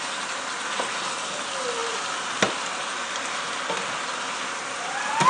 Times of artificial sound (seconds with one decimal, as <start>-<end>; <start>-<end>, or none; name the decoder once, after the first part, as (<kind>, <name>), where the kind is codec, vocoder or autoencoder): none